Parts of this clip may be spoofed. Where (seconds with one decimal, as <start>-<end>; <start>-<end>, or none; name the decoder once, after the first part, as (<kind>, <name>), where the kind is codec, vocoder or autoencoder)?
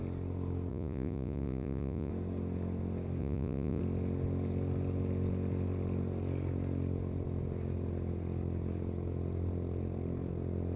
0.7-2.1 (vocoder, Vocos); 3.2-3.8